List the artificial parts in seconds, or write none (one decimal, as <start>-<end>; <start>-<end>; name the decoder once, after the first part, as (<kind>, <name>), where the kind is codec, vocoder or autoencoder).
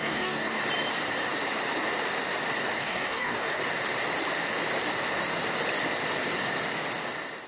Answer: 0.0-0.6 (codec, DAC); 2.8-3.6